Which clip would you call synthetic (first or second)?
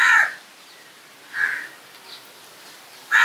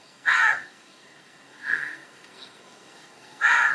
second